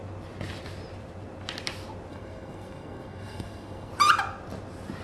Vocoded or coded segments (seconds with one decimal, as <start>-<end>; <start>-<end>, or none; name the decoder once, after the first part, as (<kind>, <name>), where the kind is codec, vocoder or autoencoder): 2.1-3.9 (codec, SNAC)